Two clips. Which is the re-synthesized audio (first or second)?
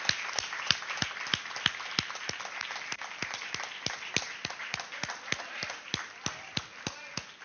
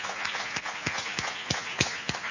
second